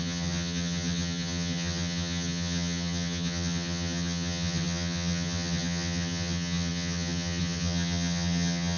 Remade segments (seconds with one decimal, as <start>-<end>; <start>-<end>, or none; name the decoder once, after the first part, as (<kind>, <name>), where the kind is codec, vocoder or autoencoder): 0.0-8.8 (vocoder, HiFi-GAN)